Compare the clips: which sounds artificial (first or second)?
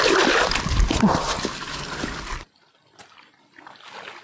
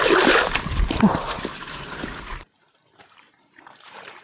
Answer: second